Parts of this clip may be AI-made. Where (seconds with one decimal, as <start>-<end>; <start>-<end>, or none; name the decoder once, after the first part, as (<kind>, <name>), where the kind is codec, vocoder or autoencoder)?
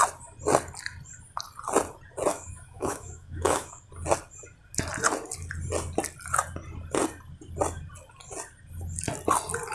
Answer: 2.3-3.8 (autoencoder, DAC-VAE)